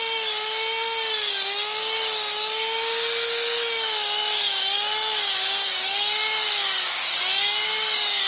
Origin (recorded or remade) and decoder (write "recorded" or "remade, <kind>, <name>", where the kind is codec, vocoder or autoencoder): remade, codec, DAC